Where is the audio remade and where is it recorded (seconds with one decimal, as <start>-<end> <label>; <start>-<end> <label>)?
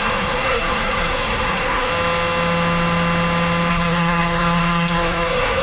0.0-1.9 remade; 1.9-3.7 recorded; 3.7-5.6 remade